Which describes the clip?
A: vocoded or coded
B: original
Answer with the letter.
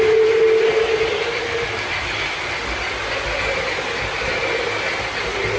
B